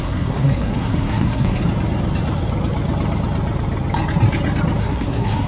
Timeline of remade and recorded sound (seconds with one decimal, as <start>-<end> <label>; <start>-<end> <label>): 0.0-1.6 remade; 1.6-4.8 recorded; 4.8-5.5 remade